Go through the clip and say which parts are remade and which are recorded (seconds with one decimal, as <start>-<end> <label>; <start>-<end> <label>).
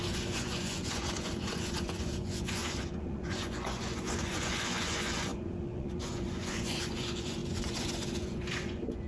0.0-9.1 remade